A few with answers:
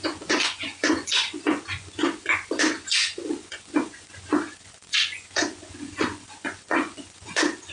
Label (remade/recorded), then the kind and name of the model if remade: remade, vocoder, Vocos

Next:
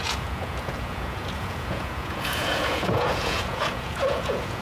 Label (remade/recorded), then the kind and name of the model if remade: remade, vocoder, Vocos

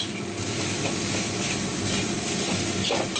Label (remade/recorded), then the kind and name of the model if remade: recorded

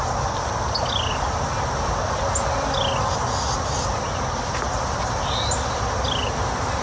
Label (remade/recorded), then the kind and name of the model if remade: recorded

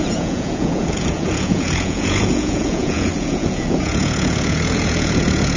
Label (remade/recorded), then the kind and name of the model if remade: remade, vocoder, Vocos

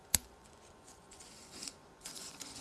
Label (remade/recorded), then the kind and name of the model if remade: remade, vocoder, Vocos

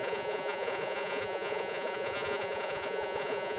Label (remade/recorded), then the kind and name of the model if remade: remade, vocoder, Vocos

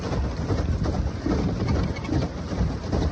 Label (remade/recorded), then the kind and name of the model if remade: recorded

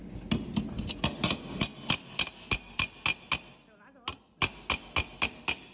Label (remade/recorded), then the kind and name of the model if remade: recorded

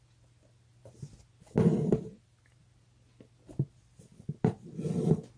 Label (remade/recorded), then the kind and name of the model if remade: recorded